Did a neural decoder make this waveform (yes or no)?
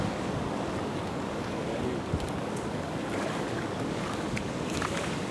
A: yes